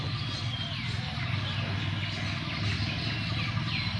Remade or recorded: recorded